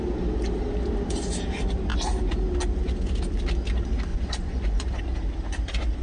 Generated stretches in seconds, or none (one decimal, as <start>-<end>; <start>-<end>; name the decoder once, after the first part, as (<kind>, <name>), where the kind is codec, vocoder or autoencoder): 4.1-5.0 (vocoder, Vocos)